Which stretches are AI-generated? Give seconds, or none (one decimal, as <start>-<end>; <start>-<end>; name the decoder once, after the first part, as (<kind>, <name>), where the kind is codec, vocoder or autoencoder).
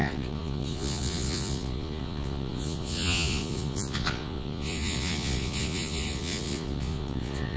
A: 0.0-7.6 (vocoder, Vocos)